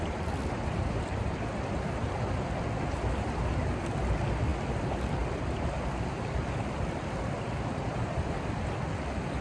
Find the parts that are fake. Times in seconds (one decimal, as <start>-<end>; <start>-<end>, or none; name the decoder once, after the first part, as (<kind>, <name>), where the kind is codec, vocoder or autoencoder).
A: none